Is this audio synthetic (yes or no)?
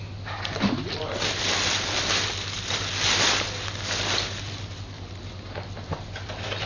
no